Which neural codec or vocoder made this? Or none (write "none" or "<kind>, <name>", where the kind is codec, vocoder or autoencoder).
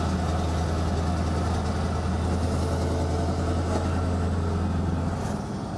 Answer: none